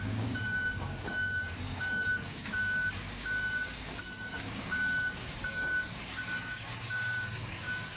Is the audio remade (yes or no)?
yes